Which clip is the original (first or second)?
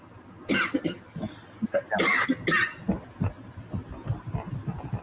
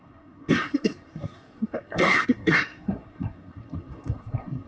first